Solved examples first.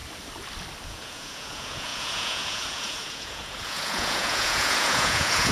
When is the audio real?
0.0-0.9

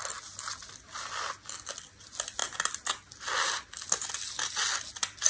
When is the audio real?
0.0-5.3

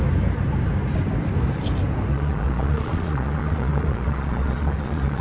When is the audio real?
0.0-2.1

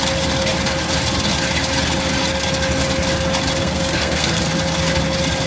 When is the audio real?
0.0-3.6; 4.4-5.5

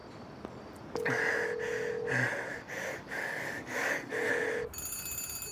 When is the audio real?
0.0-2.5; 4.3-5.5

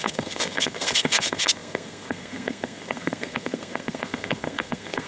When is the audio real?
none